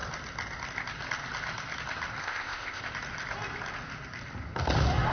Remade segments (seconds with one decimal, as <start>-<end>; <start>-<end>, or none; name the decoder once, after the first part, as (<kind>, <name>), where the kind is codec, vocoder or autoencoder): 2.2-2.8 (codec, ZipCodec)